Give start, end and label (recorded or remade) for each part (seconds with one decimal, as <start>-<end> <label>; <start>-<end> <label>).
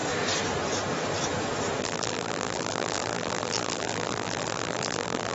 0.0-1.8 recorded; 1.8-5.3 remade